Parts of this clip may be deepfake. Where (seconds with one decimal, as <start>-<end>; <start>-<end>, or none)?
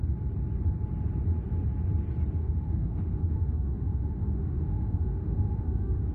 2.4-6.1